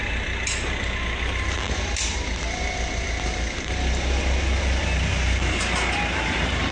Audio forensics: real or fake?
real